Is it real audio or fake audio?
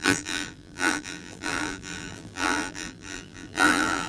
fake